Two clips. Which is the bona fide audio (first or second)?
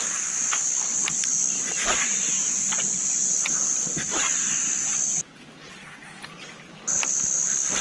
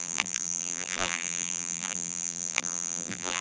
first